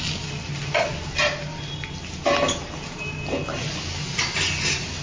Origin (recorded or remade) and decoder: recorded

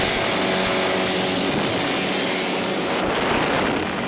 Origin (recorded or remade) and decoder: recorded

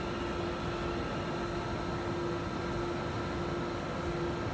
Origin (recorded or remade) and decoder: recorded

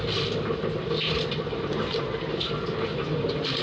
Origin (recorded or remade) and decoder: recorded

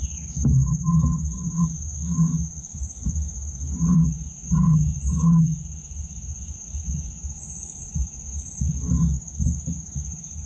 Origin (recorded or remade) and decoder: remade, codec, DAC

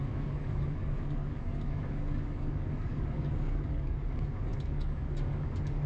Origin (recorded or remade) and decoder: remade, codec, DAC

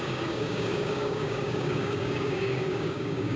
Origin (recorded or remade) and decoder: remade, codec, DAC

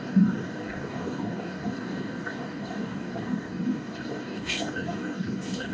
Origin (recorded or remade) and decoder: remade, codec, DAC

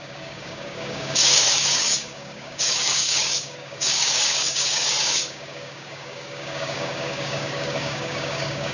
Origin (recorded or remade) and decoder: remade, codec, DAC